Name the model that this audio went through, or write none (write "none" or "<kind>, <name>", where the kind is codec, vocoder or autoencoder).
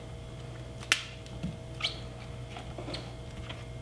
none